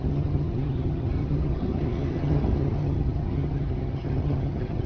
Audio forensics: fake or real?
fake